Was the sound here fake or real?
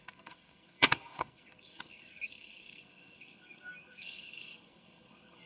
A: fake